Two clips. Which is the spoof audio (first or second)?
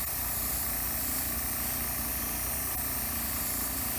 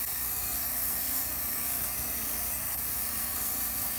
second